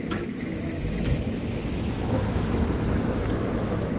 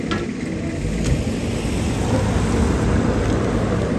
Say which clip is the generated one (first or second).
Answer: first